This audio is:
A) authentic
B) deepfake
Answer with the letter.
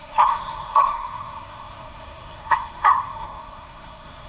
B